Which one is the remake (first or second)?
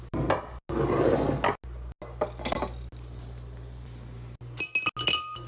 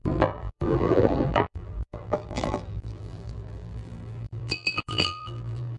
second